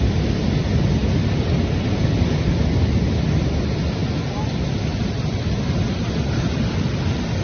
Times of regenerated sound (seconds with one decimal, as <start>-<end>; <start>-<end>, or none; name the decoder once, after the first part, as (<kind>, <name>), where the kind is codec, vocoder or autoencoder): none